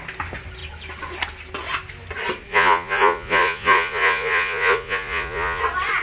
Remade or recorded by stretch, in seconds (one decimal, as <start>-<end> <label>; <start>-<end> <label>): 0.0-2.5 recorded; 2.5-5.6 remade; 5.6-6.0 recorded